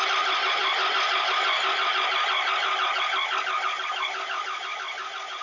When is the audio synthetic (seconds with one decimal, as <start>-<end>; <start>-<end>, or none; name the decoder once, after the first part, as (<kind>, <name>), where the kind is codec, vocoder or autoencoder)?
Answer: none